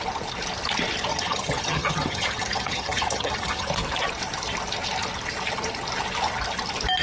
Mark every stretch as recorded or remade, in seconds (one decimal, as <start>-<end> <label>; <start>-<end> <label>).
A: 0.0-1.1 recorded; 1.1-3.7 remade; 3.7-7.0 recorded